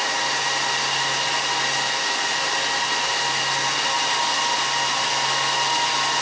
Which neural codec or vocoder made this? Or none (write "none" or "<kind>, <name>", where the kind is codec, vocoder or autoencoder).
none